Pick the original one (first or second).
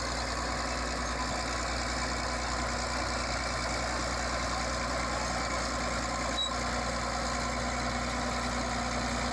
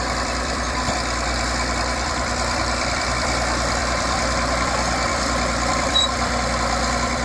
first